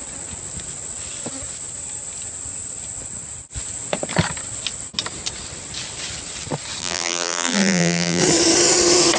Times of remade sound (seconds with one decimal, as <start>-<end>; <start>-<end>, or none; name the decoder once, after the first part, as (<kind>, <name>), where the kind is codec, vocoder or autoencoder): 6.8-8.2 (vocoder, BigVGAN v2)